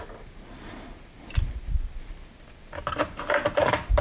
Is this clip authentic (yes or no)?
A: yes